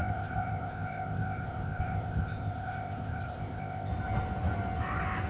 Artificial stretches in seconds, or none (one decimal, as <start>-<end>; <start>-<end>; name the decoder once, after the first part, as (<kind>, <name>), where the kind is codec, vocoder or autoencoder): 0.0-3.9 (codec, ZipCodec)